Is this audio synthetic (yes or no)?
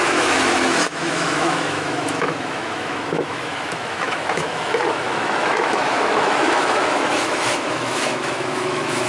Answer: yes